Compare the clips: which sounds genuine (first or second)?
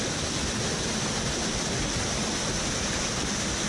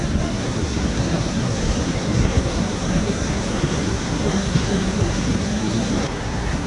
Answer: first